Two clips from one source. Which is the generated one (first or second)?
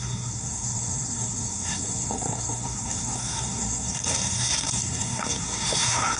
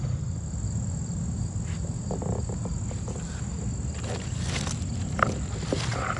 first